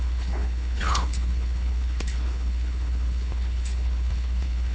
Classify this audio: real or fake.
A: fake